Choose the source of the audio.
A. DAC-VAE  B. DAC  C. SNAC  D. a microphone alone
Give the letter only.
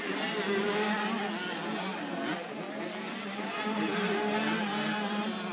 D